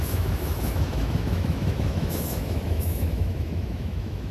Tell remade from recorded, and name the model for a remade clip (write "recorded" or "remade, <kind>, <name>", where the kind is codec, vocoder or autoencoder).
remade, autoencoder, DAC-VAE